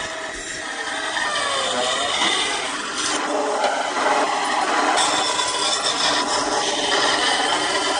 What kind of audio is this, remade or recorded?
recorded